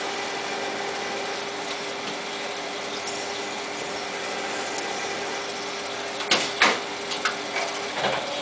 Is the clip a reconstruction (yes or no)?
no